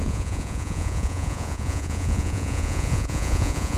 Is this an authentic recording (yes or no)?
no